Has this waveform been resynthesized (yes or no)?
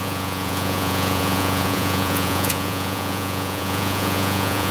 yes